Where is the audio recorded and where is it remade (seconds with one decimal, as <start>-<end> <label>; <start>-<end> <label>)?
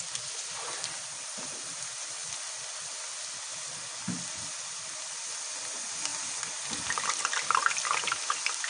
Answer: 0.0-8.7 recorded